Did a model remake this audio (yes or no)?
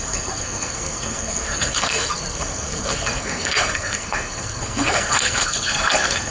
yes